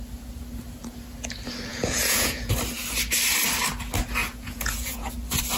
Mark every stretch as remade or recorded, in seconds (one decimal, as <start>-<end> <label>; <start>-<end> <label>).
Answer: 0.0-1.7 recorded; 1.7-2.5 remade; 2.5-4.2 recorded; 4.2-5.1 remade; 5.1-5.6 recorded